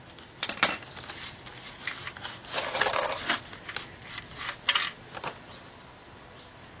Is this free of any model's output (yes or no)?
yes